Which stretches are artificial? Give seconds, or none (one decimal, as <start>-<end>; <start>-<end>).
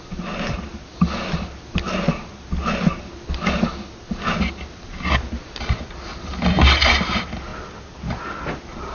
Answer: none